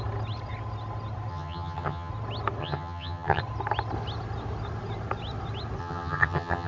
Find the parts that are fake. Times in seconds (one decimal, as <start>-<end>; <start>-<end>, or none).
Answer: 1.3-2.1; 2.6-3.4; 5.8-6.7